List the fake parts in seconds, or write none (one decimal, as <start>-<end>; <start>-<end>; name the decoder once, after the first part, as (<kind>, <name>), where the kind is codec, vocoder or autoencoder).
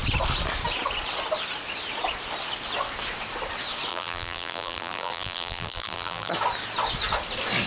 3.9-6.3 (vocoder, BigVGAN v2)